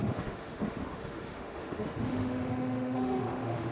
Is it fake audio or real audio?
fake